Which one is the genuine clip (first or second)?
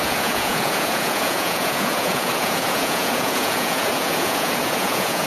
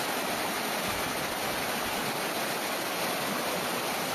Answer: second